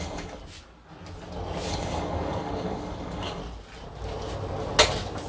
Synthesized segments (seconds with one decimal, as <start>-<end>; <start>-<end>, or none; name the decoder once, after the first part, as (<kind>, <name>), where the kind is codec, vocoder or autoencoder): 0.0-0.4 (codec, DAC); 1.7-3.4